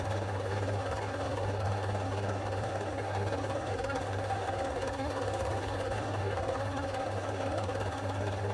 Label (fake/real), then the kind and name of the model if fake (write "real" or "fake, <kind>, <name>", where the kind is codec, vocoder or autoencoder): fake, codec, SNAC